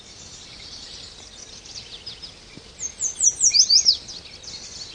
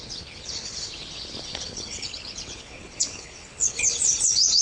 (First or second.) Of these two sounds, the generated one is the second